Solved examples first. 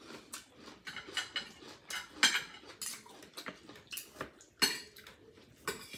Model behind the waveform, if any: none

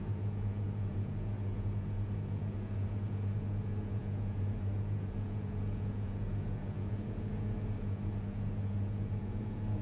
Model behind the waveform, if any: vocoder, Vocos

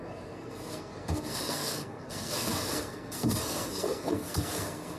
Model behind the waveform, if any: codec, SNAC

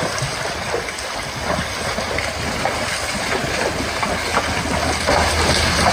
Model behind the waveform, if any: none